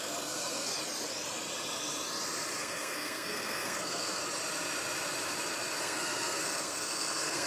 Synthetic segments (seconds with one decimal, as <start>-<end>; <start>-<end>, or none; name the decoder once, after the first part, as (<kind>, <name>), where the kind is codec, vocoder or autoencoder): 0.0-0.7 (codec, SNAC); 2.6-4.2; 5.8-7.5